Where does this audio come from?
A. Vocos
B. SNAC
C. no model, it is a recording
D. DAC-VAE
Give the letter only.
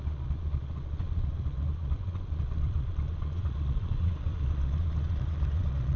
A